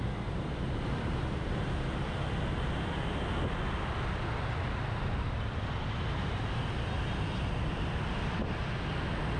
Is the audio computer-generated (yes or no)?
no